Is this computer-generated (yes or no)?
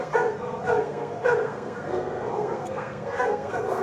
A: yes